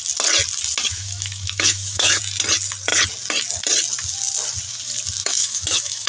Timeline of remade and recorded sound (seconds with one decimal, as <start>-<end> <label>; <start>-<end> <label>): 0.0-0.9 recorded; 0.9-2.2 remade; 2.2-5.2 recorded; 5.2-6.1 remade